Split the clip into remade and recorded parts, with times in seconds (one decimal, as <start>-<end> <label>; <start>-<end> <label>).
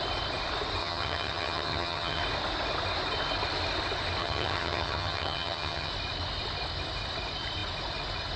0.0-0.8 recorded; 0.8-2.2 remade; 2.2-4.2 recorded; 4.2-5.9 remade; 5.9-8.4 recorded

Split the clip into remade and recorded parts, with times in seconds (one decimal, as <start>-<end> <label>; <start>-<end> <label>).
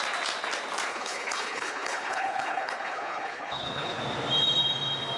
0.0-0.9 recorded; 0.9-4.0 remade; 4.0-5.2 recorded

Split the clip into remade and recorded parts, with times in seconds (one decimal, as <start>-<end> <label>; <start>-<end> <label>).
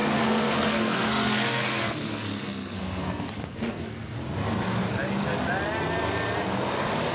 0.0-4.2 remade; 4.2-7.1 recorded